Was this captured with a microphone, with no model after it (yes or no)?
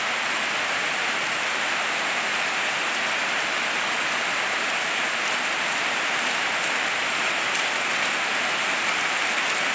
yes